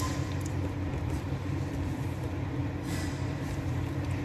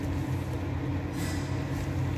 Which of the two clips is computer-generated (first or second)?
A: first